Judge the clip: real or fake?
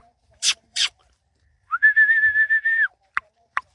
fake